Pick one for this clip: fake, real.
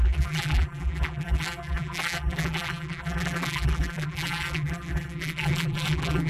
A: fake